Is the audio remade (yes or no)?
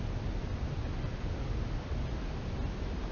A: no